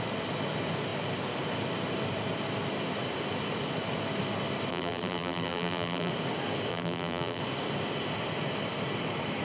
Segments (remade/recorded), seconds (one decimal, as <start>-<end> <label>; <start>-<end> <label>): 0.0-4.7 recorded; 4.7-6.1 remade; 6.1-6.7 recorded; 6.7-7.4 remade; 7.4-9.4 recorded